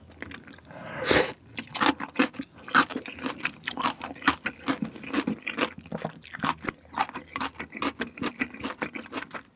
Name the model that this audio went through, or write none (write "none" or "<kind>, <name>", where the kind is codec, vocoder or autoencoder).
none